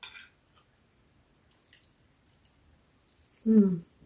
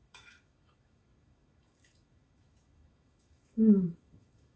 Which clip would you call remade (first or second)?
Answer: second